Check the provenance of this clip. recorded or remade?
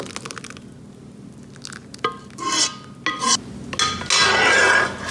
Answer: recorded